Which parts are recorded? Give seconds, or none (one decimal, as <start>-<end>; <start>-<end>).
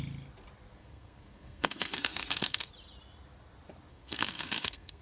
0.0-0.8; 2.7-3.9